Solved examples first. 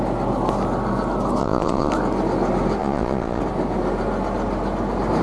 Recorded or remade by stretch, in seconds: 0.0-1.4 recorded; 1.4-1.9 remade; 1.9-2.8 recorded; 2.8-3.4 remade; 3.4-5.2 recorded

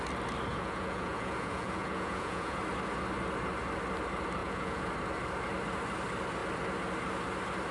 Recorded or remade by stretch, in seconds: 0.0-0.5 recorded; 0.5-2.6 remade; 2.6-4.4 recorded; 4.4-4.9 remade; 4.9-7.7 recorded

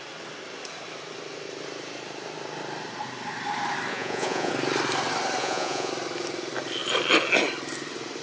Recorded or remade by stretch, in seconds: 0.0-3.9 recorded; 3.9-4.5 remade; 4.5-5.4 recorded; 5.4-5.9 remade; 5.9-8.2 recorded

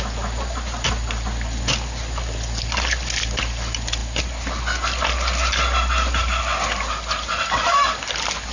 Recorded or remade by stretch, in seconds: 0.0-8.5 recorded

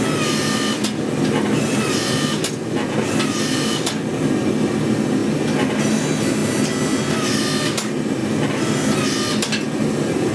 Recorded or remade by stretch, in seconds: 0.0-10.3 recorded